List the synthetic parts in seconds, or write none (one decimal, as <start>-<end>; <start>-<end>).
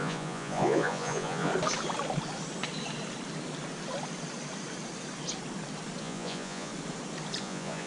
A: 0.0-1.5; 6.0-6.7; 7.4-7.9